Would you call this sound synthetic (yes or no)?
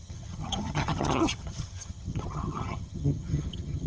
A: yes